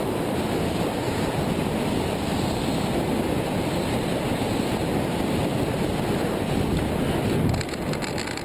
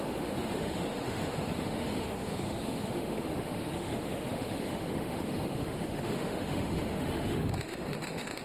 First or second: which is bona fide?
first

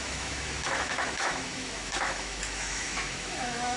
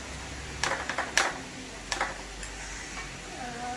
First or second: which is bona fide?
second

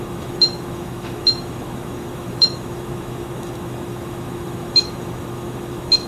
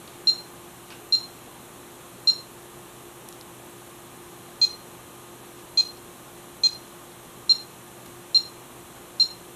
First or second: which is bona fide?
second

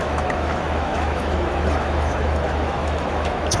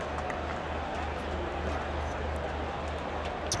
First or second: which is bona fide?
second